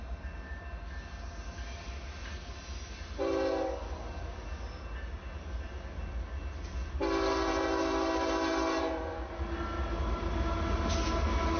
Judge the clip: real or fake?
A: real